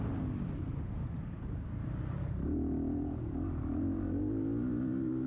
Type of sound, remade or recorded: recorded